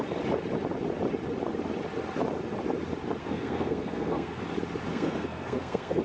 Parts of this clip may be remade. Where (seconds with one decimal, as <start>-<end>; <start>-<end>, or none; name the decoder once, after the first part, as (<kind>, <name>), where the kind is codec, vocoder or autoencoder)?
3.2-4.4 (codec, SNAC); 4.9-6.0